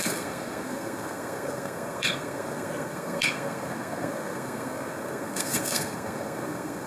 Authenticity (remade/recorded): remade